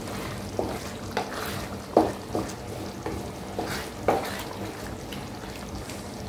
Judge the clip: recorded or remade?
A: recorded